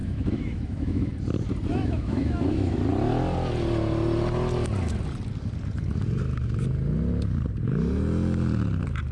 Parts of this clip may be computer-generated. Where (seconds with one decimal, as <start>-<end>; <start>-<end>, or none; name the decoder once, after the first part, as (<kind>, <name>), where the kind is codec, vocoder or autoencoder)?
0.0-1.1 (autoencoder, DAC-VAE); 1.7-2.8